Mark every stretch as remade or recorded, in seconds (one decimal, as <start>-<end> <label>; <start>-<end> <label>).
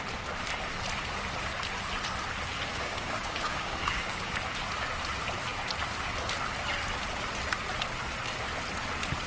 0.0-2.7 recorded; 2.7-4.3 remade; 4.3-9.3 recorded